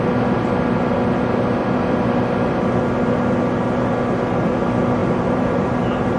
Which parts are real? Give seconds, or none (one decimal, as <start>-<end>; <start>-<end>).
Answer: 0.0-1.6; 2.6-5.0